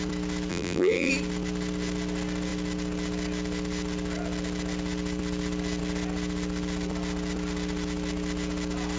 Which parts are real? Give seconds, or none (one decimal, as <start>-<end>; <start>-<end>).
0.0-0.5; 1.1-9.0